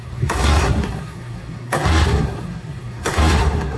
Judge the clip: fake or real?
fake